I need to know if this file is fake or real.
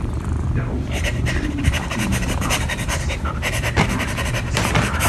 fake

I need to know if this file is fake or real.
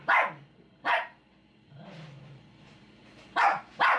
fake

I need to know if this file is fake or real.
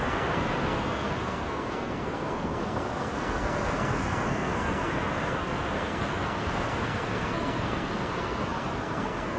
fake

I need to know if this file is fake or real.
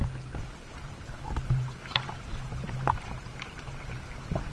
fake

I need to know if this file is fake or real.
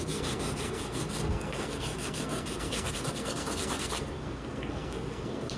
fake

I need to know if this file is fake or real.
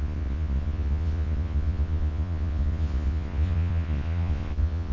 fake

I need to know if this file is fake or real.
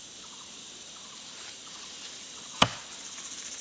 fake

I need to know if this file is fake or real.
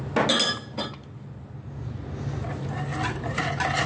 real